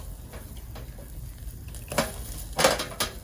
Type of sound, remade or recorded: recorded